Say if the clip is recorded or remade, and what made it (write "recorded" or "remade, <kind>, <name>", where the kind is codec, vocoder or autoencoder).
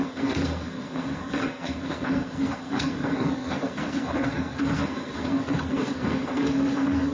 remade, codec, SNAC